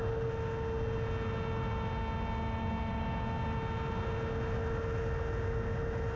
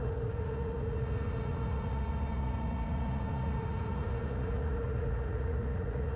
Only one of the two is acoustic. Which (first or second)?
first